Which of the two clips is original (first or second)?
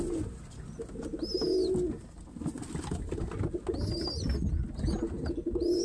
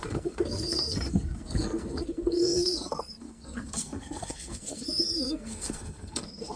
first